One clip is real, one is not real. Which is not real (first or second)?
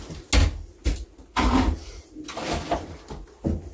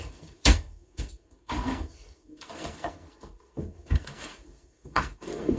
second